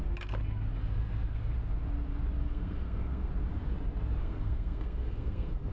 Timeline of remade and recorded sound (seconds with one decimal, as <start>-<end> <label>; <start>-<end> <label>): 0.0-2.4 recorded; 2.4-3.3 remade; 3.3-4.2 recorded; 4.2-5.7 remade